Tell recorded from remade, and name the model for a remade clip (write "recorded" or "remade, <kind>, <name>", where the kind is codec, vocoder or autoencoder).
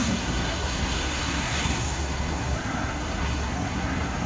remade, codec, SNAC